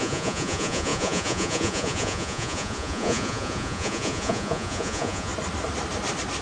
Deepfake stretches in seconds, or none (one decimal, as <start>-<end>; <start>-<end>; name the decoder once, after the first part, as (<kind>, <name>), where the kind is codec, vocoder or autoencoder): 0.0-5.3 (vocoder, Vocos)